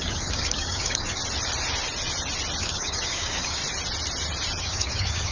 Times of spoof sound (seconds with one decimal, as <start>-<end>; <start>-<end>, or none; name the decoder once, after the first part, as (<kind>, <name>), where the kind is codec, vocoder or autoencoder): 0.0-1.2 (codec, DAC); 2.6-3.6; 4.6-5.3